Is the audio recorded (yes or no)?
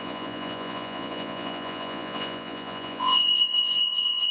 no